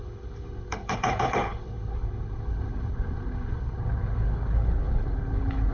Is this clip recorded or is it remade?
remade